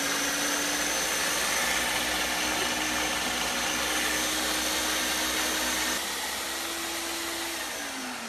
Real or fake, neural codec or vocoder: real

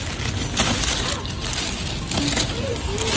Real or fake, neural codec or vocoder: real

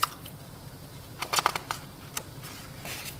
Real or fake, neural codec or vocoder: real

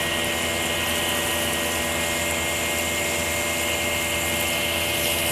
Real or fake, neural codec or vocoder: real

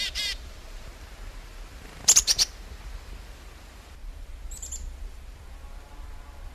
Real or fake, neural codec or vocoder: fake, vocoder, BigVGAN v2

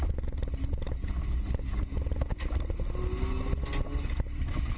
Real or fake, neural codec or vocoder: real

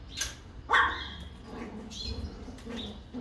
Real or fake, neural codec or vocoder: real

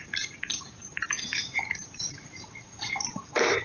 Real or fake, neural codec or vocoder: fake, vocoder, BigVGAN v2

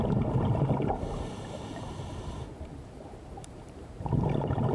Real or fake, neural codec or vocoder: fake, vocoder, BigVGAN v2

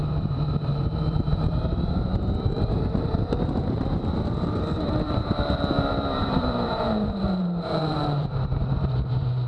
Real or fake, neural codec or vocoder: fake, vocoder, BigVGAN v2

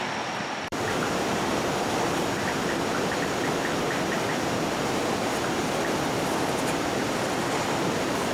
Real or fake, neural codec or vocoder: fake, vocoder, BigVGAN v2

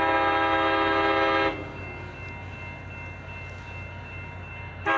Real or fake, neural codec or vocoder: real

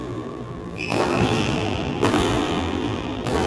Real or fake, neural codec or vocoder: fake, vocoder, BigVGAN v2